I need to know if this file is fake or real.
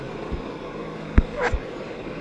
fake